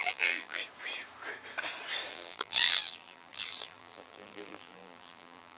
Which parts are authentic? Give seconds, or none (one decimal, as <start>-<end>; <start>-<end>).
0.6-2.1